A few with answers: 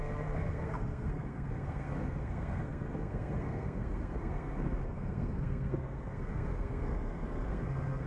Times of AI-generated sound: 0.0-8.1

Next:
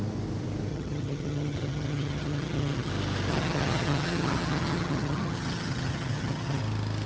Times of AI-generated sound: 0.7-2.9; 3.3-6.6

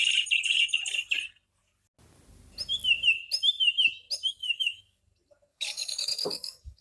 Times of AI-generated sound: 4.4-5.0; 5.5-6.8

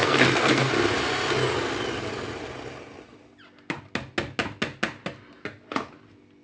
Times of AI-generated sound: 0.0-0.7

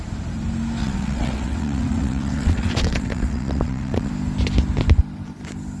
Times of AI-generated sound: 0.8-4.1

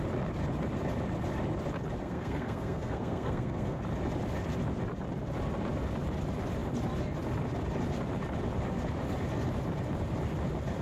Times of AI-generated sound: 2.0-3.8

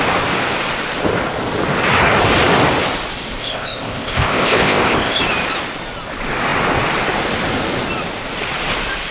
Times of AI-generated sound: 3.4-5.2